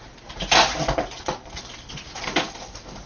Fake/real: fake